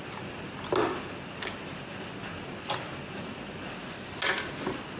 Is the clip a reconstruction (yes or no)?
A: no